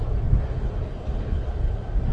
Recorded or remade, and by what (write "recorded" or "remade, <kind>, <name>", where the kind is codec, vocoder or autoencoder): recorded